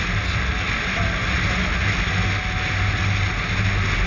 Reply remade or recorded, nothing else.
recorded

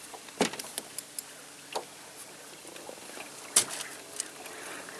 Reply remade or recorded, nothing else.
recorded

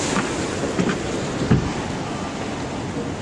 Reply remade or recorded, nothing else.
recorded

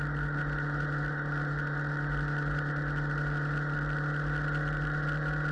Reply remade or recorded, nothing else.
recorded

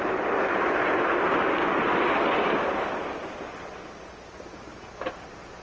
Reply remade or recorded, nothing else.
recorded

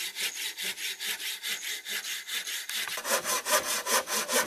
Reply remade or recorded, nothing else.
recorded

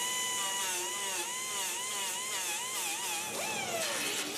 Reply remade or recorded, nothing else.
recorded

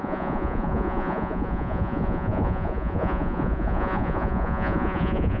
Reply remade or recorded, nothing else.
remade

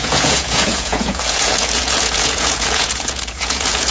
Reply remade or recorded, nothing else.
remade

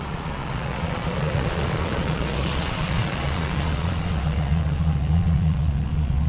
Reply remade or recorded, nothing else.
remade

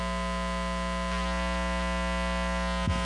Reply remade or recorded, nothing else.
recorded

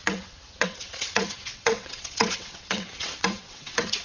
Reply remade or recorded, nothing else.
remade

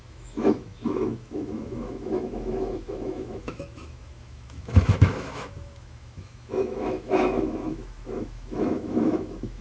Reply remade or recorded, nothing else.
remade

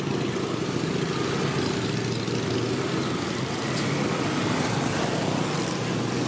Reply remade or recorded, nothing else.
recorded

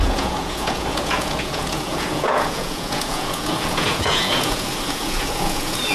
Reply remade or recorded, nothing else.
remade